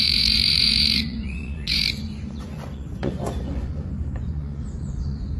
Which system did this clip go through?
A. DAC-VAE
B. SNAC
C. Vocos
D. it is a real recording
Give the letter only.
C